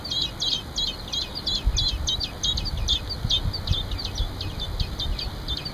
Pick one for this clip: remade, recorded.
recorded